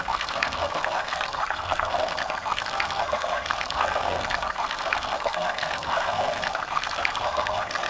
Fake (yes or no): yes